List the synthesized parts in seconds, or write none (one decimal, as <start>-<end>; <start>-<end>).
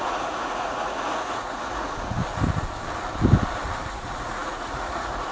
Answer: 0.0-2.2; 3.9-5.3